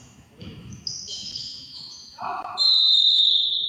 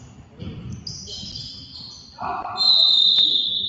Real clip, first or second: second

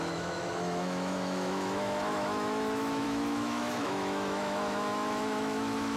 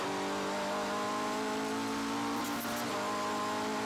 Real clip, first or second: second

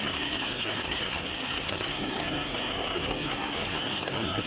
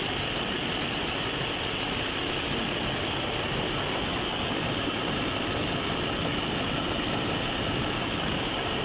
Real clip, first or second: second